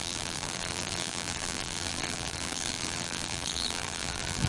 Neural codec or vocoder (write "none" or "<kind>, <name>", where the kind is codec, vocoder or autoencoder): vocoder, BigVGAN v2